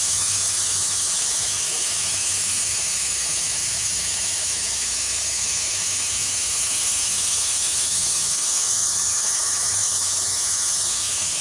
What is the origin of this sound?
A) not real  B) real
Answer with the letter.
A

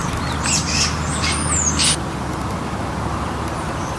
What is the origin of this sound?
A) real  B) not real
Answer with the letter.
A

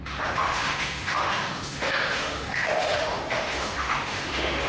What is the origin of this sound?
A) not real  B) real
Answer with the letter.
A